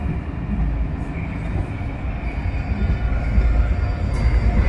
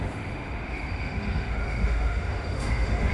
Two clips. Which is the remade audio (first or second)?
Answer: second